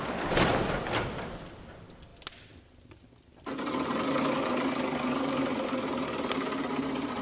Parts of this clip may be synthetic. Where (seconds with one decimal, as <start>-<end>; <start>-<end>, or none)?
none